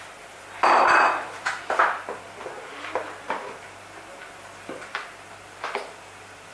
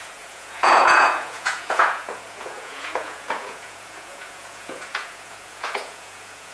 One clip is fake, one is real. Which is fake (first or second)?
second